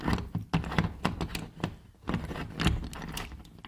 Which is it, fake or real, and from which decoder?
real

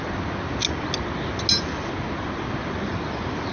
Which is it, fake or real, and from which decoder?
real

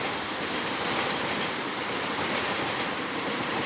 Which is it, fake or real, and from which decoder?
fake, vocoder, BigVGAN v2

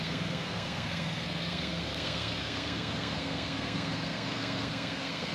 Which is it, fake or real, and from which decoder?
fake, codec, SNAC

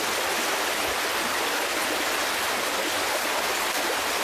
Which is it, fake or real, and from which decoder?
real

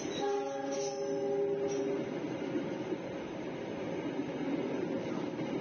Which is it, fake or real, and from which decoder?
real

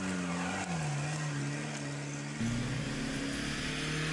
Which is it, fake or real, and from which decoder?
real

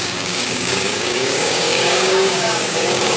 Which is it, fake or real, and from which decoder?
fake, codec, DAC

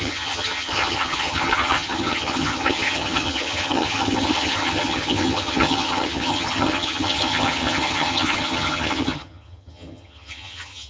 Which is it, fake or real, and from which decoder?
fake, vocoder, HiFi-GAN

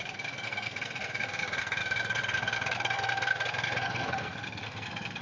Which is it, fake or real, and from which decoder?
fake, codec, SNAC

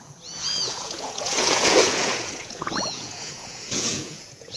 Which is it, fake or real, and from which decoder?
fake, vocoder, Vocos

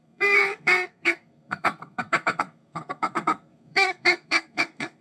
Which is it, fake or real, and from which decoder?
fake, codec, SNAC